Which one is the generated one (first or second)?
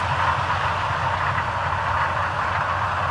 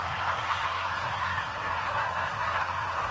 second